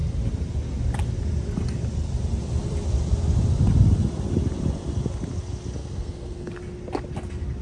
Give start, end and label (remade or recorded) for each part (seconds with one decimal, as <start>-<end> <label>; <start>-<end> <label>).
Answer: 0.0-5.8 recorded; 5.8-6.5 remade; 6.5-7.6 recorded